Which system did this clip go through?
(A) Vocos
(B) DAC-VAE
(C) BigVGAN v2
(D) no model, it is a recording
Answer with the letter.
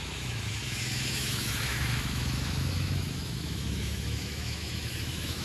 B